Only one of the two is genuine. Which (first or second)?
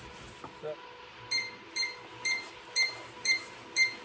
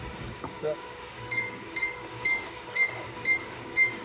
first